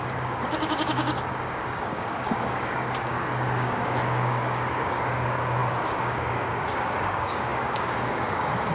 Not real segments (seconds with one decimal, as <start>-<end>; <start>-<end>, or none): 0.0-8.7